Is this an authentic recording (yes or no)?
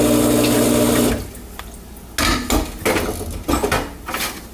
yes